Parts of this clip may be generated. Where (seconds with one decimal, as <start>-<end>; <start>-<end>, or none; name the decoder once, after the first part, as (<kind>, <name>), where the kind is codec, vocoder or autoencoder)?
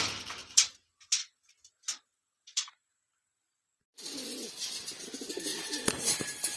0.4-1.5 (vocoder, BigVGAN v2); 1.9-3.6; 5.5-6.1